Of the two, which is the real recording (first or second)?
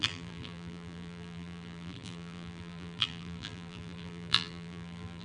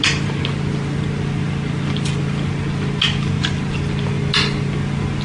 second